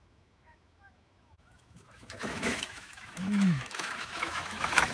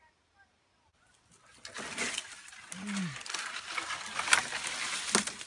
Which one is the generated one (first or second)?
first